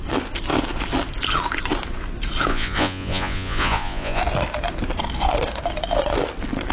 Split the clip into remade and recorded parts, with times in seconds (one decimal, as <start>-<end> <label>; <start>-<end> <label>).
0.0-2.5 recorded; 2.5-4.2 remade; 4.2-6.7 recorded